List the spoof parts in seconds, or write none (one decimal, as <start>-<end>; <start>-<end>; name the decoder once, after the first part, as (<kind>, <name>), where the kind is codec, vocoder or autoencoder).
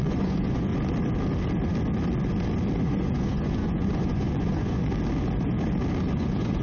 0.0-0.7 (vocoder, Vocos); 2.8-4.8; 6.1-6.6